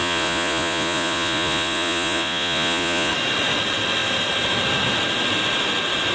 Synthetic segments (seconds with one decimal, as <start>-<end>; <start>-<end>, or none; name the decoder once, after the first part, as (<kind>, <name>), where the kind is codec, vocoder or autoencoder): 0.0-3.1 (vocoder, Vocos)